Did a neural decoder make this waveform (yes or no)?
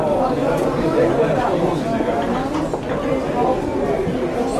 no